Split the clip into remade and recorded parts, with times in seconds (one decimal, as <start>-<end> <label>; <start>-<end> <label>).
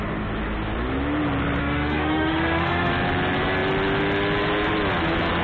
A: 0.0-1.6 recorded; 1.6-2.9 remade; 2.9-5.4 recorded